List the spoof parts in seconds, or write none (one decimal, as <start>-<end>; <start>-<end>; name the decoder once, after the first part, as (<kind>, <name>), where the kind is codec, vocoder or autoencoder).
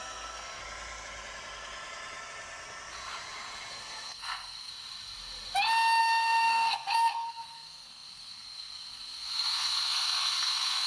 0.0-0.6 (codec, SNAC); 3.7-4.7; 6.0-10.9